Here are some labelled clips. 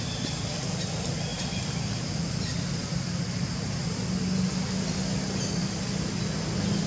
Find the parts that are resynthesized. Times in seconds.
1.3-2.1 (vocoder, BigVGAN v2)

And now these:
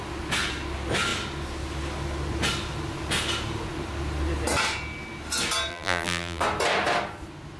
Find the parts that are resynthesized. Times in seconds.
5.7-6.4 (vocoder, BigVGAN v2)

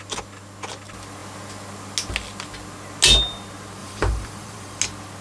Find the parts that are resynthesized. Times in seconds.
3.8-4.8 (vocoder, BigVGAN v2)

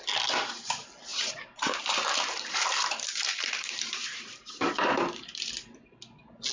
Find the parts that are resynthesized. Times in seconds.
1.1-5.0 (vocoder, BigVGAN v2)